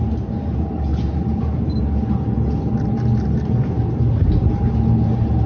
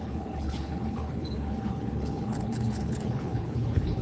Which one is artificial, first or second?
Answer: second